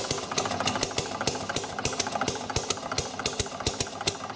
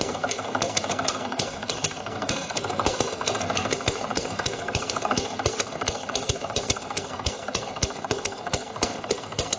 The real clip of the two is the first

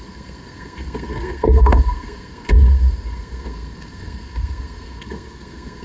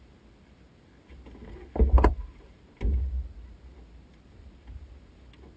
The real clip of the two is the second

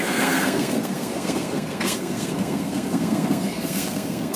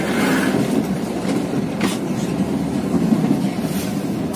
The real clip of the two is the second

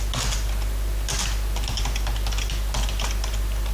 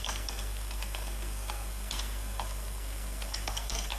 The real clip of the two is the first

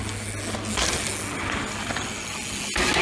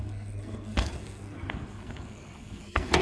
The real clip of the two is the first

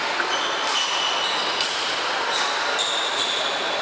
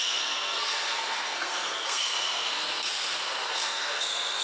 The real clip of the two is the first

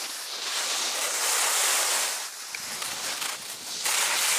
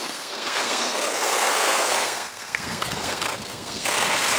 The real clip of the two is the first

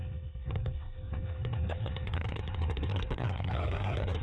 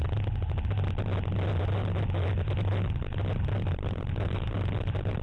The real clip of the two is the second